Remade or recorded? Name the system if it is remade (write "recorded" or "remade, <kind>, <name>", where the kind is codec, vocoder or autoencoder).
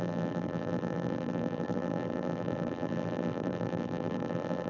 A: remade, vocoder, BigVGAN v2